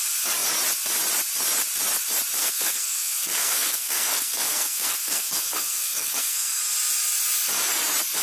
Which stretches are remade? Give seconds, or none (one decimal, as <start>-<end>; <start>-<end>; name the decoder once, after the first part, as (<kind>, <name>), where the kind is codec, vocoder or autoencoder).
2.4-6.6 (codec, SNAC)